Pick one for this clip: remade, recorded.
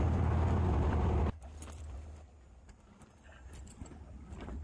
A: remade